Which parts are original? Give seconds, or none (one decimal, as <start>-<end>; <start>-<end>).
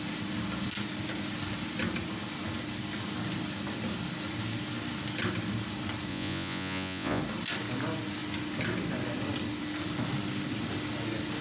0.0-6.1; 7.2-11.4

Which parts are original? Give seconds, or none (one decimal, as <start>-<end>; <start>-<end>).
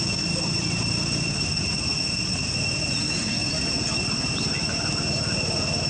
0.0-5.9